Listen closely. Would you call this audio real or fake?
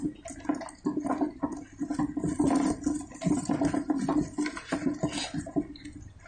real